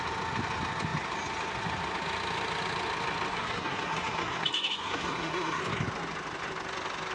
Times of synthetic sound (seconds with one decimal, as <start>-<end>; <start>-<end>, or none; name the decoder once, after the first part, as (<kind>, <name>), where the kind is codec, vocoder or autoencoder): 3.3-5.6 (codec, SNAC)